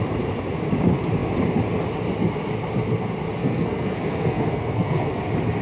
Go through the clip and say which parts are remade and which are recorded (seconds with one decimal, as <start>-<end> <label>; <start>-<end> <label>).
0.0-3.4 recorded; 3.4-5.1 remade; 5.1-5.6 recorded